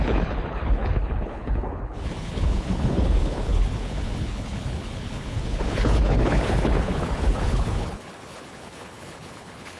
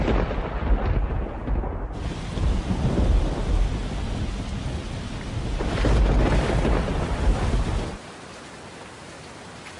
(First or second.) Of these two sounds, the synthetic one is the first